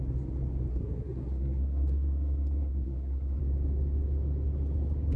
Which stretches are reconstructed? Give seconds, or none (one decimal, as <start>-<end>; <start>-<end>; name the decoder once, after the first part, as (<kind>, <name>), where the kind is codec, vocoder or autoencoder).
0.7-3.4 (codec, SNAC)